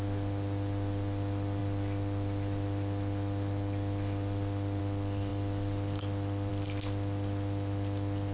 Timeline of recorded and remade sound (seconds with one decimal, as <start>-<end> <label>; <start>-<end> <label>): 0.0-8.3 recorded